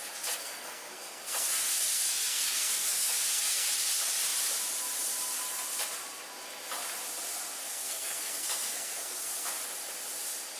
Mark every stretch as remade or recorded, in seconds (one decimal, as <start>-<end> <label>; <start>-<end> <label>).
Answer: 0.0-0.4 recorded; 0.4-3.7 remade; 3.7-7.6 recorded; 7.6-9.5 remade; 9.5-10.6 recorded